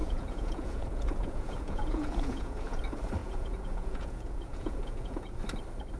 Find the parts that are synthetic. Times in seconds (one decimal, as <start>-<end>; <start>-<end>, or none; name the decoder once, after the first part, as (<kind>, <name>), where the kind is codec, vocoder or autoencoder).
0.0-2.8 (vocoder, Vocos); 3.2-5.4